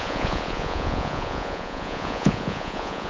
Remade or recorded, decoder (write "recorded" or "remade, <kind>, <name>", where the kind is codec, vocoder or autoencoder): remade, vocoder, Vocos